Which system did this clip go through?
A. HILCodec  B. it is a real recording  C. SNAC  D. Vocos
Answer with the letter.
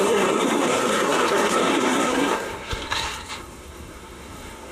C